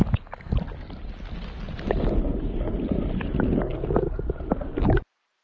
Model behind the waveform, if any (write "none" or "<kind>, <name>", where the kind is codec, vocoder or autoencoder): none